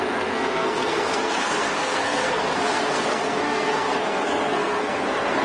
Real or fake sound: fake